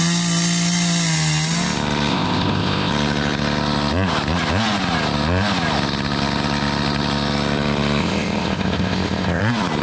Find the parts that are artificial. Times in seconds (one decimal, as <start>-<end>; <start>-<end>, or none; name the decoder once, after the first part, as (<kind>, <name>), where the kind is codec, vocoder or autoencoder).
2.1-2.9 (codec, ZipCodec); 8.0-9.4